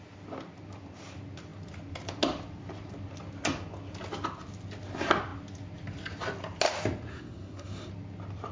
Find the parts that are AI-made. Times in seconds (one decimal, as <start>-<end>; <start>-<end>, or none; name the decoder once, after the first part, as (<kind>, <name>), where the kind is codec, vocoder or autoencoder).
7.1-7.9 (codec, SNAC)